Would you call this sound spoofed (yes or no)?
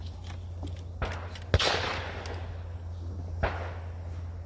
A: no